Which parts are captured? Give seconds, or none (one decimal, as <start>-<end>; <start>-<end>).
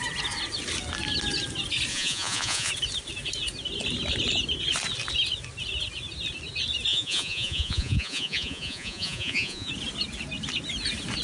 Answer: 0.0-1.9; 2.7-6.9; 9.7-11.2